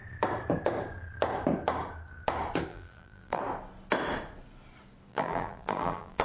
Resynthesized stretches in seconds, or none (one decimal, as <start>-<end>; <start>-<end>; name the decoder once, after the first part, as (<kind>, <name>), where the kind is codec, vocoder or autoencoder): 2.7-3.4 (vocoder, BigVGAN v2); 5.1-6.2